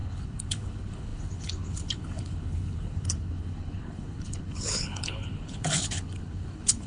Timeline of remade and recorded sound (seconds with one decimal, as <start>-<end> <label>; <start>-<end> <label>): 0.0-6.9 remade

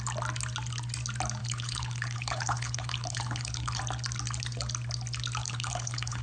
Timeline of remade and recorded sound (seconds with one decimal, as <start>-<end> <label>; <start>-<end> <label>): 0.0-1.4 recorded; 1.4-3.8 remade; 3.8-5.4 recorded; 5.4-6.2 remade